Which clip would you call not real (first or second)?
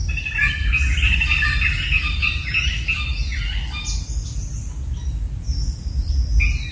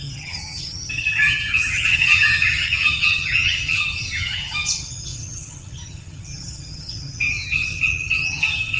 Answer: second